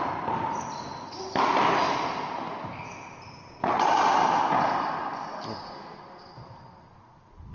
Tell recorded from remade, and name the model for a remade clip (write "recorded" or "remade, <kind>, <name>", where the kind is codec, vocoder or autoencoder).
recorded